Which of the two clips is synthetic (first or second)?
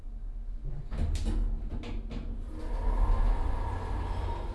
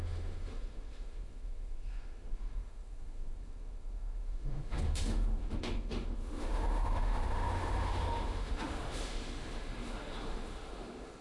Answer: second